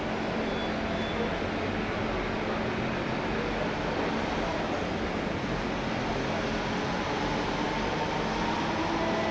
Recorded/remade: recorded